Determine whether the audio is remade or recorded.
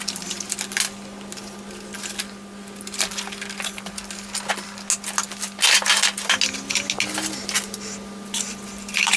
recorded